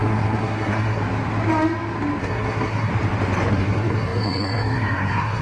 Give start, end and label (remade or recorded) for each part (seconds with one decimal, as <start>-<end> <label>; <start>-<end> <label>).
0.0-1.0 remade; 1.0-2.2 recorded; 2.2-2.9 remade; 2.9-3.5 recorded; 3.5-5.4 remade